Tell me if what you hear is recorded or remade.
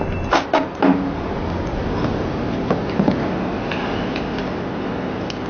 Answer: recorded